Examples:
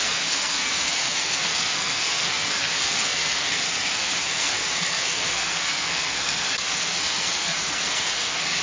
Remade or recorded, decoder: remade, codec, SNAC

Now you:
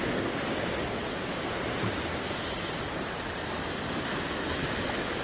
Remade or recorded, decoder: recorded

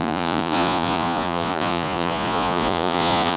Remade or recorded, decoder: remade, vocoder, Vocos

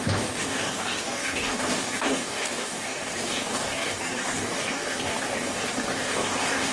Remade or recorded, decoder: remade, codec, DAC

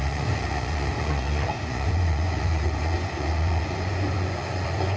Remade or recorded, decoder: remade, vocoder, Vocos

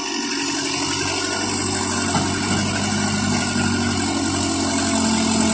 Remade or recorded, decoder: recorded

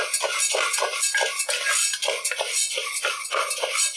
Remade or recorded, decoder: recorded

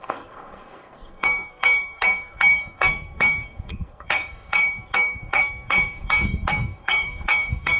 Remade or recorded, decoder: remade, codec, SNAC